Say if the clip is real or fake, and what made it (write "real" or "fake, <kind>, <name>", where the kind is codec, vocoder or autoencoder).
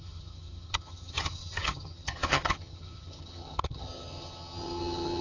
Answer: fake, vocoder, HiFi-GAN